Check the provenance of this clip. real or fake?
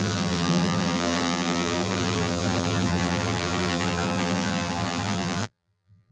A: fake